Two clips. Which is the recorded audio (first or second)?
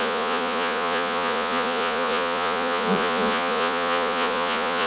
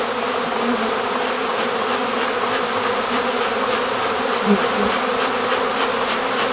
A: second